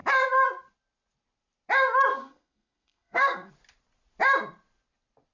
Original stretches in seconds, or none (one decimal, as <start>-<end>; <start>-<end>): 0.0-2.1; 3.5-5.3